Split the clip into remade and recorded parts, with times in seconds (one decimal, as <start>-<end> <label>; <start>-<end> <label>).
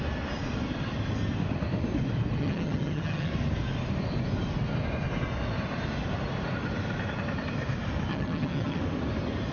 0.0-2.4 recorded; 2.4-3.3 remade; 3.3-8.1 recorded; 8.1-8.8 remade; 8.8-9.5 recorded